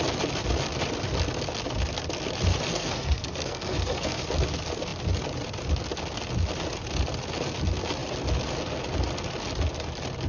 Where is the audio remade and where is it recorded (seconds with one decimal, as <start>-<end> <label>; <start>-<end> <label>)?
0.0-2.7 recorded; 2.7-4.2 remade; 4.2-10.3 recorded